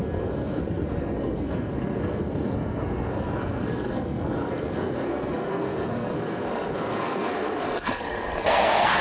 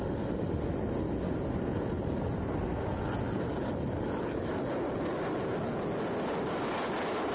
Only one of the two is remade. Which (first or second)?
first